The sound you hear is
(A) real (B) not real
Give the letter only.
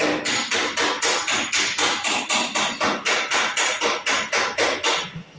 A